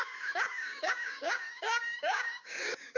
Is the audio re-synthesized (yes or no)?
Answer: yes